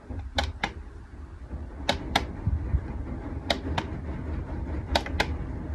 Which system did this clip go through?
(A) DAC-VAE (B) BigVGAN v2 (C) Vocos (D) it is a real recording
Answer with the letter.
D